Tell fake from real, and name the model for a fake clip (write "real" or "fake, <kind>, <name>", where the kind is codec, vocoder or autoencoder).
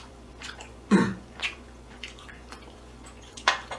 fake, vocoder, Vocos